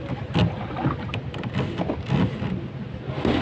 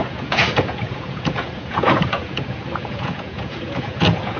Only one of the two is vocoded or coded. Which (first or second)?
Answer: second